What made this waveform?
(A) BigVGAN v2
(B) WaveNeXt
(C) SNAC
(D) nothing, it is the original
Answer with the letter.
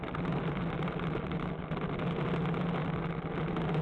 D